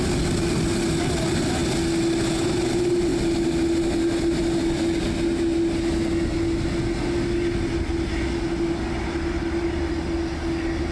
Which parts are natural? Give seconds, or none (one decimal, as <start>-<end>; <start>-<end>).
0.0-10.9

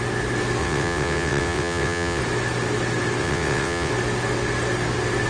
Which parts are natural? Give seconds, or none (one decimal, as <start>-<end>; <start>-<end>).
0.0-0.6; 2.2-3.2; 3.9-5.3

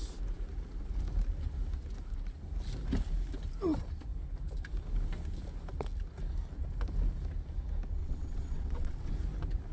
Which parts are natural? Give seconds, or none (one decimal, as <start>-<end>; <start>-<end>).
0.0-8.0; 9.1-9.7